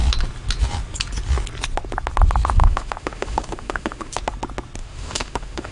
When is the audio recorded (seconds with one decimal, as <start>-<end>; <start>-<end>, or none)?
0.0-2.6; 4.2-4.8

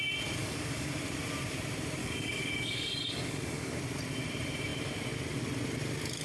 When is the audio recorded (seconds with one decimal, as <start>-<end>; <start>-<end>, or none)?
0.0-0.4; 0.9-2.0; 3.8-6.2

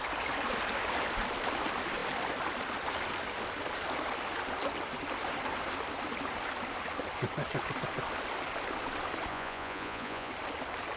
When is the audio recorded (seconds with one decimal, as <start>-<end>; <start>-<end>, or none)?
0.0-9.3; 10.3-11.0

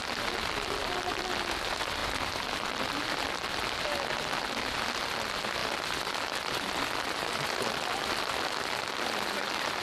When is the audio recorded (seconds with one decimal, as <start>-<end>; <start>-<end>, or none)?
0.0-9.8

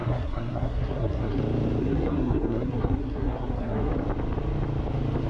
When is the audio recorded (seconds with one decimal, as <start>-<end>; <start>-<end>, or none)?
1.4-1.8; 3.9-5.3

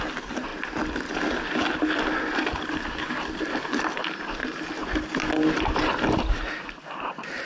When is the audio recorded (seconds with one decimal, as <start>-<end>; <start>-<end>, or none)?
0.0-7.5

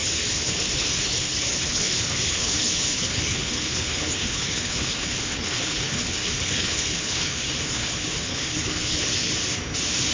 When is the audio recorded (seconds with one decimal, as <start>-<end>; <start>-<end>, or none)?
9.3-10.1